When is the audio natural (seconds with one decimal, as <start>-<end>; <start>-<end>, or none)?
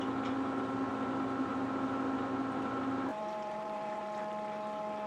0.0-3.1; 4.2-5.1